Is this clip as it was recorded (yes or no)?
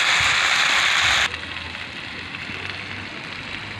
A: yes